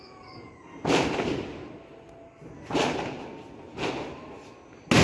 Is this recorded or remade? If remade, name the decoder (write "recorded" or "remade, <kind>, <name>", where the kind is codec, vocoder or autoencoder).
recorded